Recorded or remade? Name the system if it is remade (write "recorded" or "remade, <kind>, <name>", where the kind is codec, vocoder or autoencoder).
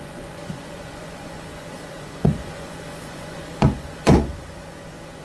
remade, vocoder, Vocos